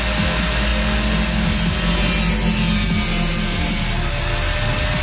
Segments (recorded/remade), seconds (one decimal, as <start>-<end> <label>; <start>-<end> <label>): 0.0-5.0 recorded